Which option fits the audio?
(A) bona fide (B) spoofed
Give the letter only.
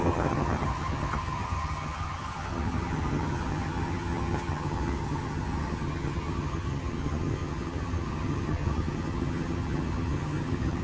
B